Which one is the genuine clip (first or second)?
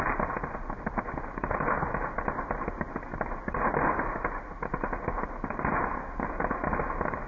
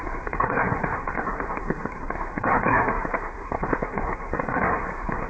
first